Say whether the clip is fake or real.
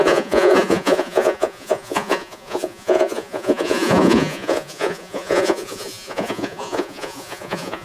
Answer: fake